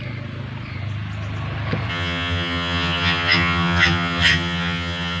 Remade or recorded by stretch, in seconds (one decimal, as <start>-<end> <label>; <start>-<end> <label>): 0.0-1.9 recorded; 1.9-5.2 remade